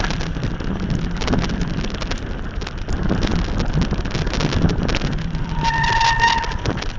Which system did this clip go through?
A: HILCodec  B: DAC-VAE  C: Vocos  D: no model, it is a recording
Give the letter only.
D